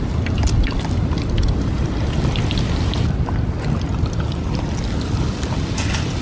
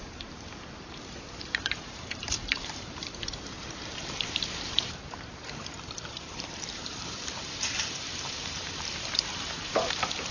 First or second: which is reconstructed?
second